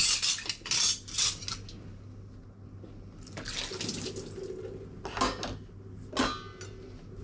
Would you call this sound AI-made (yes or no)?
no